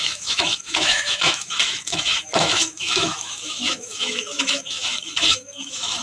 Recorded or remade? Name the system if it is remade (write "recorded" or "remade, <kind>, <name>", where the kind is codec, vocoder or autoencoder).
remade, autoencoder, DAC-VAE